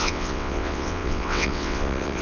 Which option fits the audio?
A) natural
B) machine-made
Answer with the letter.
B